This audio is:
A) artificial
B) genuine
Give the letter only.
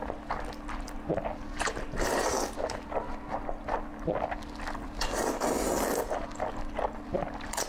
B